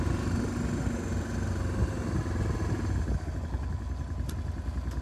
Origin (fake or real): real